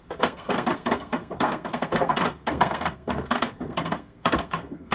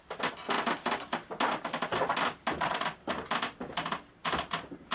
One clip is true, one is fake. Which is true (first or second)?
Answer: second